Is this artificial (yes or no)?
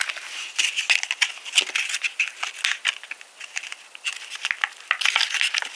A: no